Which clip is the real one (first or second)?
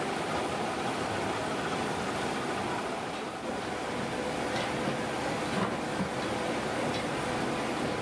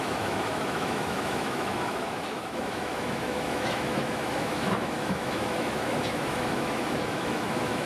first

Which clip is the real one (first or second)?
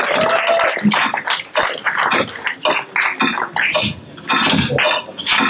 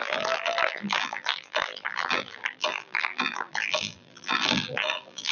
first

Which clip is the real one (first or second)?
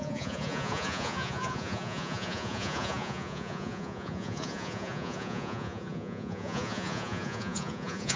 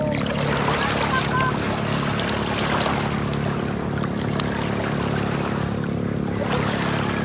second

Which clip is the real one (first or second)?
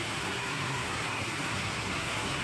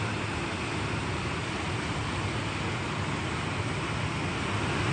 second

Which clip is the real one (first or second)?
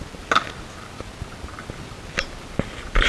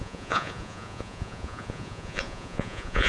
first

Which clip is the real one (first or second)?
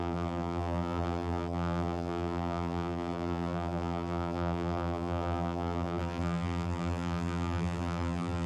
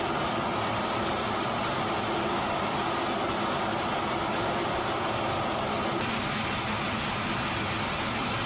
second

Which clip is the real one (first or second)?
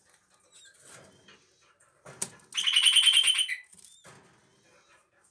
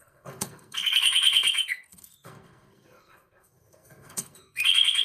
first